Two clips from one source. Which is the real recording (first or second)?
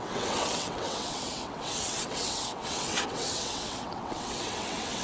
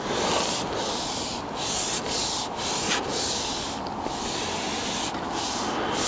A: second